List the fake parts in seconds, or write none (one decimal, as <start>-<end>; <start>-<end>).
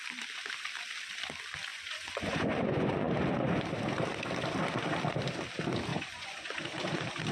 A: 1.7-3.1; 5.9-6.6